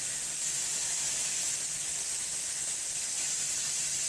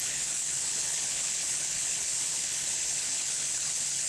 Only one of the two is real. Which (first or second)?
first